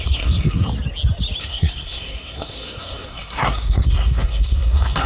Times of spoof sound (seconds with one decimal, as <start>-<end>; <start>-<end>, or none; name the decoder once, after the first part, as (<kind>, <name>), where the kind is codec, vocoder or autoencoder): 0.0-0.7 (codec, SNAC); 1.4-5.1